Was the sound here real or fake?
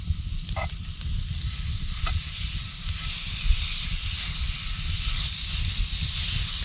real